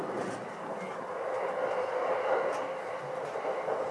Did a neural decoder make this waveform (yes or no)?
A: no